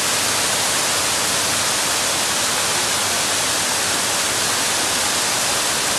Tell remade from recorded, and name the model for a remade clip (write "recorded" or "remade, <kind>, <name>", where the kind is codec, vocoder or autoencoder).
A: recorded